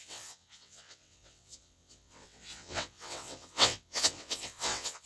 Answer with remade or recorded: remade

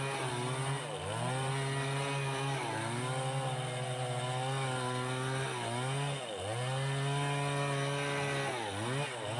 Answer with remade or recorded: recorded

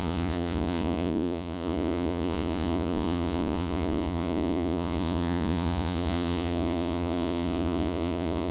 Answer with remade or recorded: remade